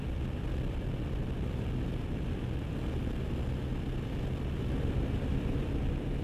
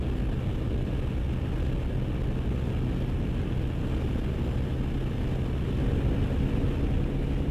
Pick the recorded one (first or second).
second